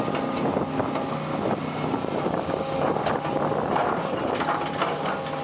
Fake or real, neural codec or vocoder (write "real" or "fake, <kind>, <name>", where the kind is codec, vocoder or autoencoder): real